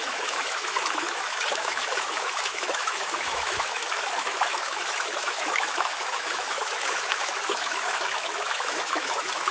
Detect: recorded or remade remade